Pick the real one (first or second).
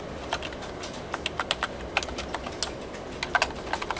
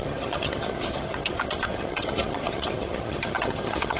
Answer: first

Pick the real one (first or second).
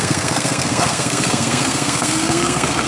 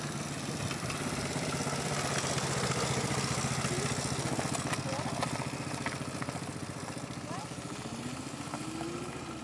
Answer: second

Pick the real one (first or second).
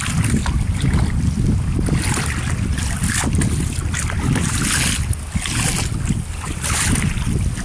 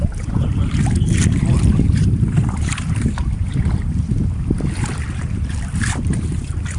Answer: first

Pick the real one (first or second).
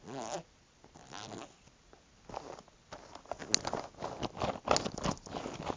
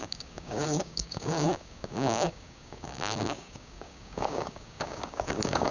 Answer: first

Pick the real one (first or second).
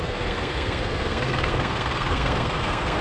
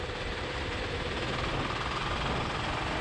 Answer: second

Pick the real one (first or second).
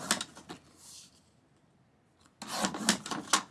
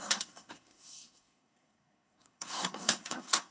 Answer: first